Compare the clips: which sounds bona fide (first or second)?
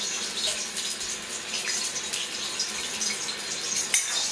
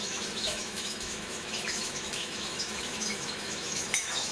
first